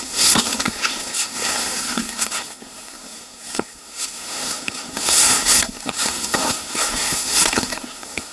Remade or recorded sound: remade